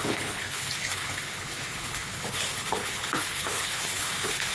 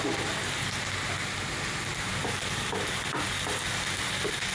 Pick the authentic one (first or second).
second